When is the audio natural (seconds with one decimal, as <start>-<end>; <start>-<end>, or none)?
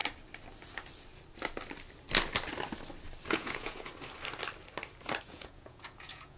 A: 0.0-3.3; 3.9-5.2